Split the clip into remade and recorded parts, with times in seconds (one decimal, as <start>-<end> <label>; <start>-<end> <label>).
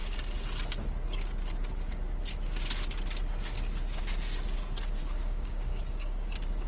0.0-5.0 recorded; 5.0-6.3 remade; 6.3-6.7 recorded